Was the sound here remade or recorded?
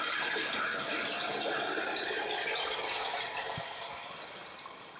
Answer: remade